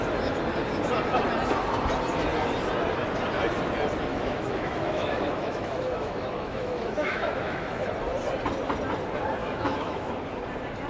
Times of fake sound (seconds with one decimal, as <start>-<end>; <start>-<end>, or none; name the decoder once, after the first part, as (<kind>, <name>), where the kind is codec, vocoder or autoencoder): 4.1-7.9 (autoencoder, DAC-VAE); 9.4-10.1